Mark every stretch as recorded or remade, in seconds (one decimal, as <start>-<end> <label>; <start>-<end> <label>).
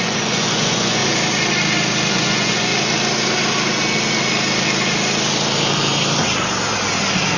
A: 0.0-1.0 remade; 1.0-2.1 recorded; 2.1-2.7 remade; 2.7-7.4 recorded